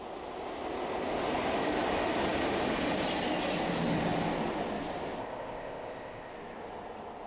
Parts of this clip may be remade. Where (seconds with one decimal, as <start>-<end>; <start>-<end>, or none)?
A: 5.2-6.3